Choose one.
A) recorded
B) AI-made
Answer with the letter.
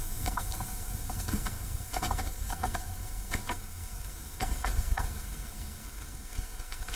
B